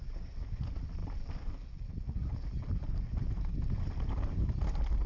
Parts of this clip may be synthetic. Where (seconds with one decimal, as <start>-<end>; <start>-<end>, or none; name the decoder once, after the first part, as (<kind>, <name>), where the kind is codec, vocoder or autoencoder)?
none